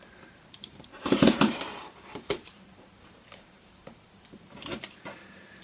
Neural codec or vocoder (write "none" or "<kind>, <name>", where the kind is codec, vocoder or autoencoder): vocoder, BigVGAN v2